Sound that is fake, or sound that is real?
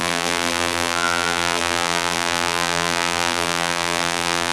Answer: fake